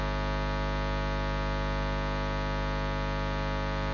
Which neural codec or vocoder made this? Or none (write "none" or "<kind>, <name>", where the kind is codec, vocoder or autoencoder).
none